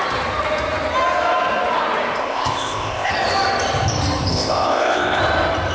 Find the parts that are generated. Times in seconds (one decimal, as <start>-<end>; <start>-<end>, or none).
2.2-3.1; 4.3-5.2